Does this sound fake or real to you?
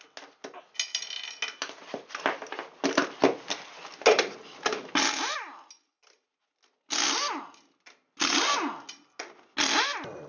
real